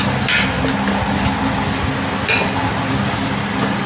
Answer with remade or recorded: recorded